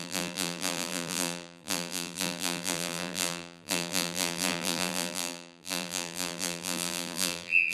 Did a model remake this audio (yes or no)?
yes